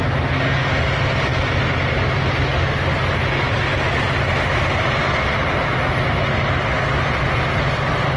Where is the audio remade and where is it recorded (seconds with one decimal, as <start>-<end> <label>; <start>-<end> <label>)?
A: 0.0-8.2 recorded